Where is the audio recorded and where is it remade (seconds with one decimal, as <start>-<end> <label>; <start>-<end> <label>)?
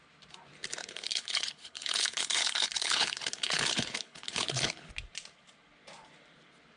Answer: 0.0-0.8 recorded; 0.8-4.9 remade; 4.9-6.8 recorded